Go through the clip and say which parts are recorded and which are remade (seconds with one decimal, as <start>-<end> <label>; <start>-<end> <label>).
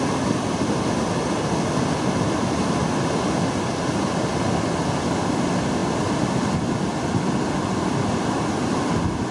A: 0.0-9.3 recorded